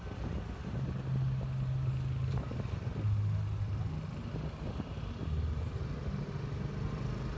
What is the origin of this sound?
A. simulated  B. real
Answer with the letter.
B